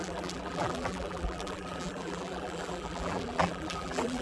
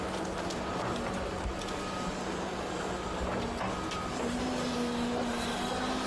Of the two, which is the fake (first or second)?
first